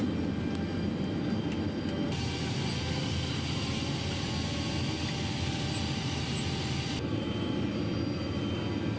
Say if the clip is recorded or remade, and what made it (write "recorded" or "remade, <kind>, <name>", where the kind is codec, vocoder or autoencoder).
recorded